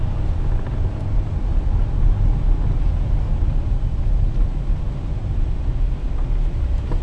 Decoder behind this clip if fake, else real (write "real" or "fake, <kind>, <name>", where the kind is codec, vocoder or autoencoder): real